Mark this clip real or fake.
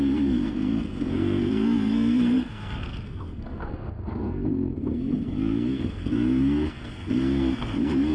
fake